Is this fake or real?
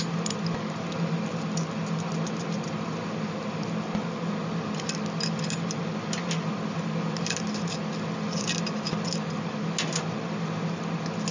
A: real